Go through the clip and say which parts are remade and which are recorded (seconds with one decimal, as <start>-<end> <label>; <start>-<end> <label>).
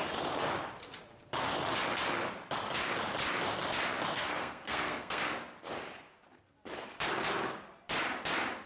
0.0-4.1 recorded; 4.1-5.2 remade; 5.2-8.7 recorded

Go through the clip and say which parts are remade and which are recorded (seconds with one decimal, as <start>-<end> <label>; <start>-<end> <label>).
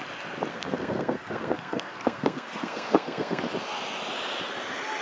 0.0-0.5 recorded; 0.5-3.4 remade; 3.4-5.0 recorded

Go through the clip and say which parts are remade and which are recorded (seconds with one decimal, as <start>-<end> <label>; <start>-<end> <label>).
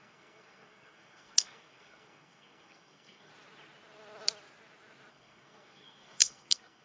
0.0-3.3 remade; 3.3-5.1 recorded; 5.1-6.8 remade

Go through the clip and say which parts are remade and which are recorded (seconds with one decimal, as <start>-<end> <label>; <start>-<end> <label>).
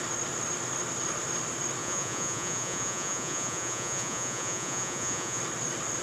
0.0-1.8 recorded; 1.8-5.4 remade; 5.4-6.0 recorded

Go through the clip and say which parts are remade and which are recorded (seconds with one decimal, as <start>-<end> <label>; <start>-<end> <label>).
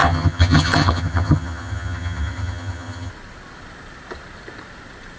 0.0-3.1 remade; 3.1-5.2 recorded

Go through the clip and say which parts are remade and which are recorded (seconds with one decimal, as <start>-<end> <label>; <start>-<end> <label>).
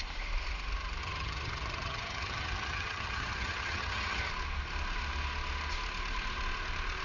0.0-1.0 recorded; 1.0-4.3 remade; 4.3-7.0 recorded